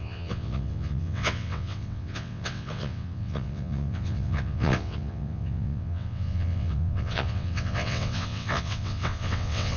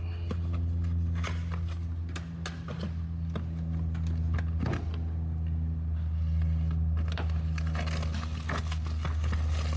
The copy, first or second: first